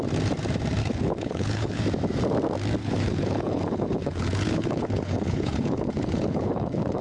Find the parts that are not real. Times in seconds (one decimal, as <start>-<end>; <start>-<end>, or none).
0.8-1.8; 2.8-7.0

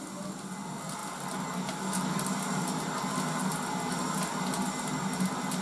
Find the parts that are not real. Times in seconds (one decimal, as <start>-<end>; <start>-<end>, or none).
none

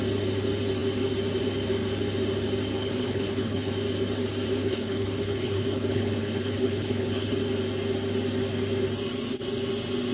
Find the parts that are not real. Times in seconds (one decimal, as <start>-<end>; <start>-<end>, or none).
2.8-3.7; 4.6-7.3

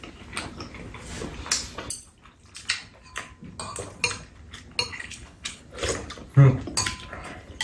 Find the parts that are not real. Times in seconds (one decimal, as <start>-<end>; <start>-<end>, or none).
4.9-5.6

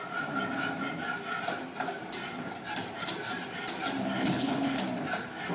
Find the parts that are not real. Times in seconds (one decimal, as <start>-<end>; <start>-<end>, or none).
4.2-4.8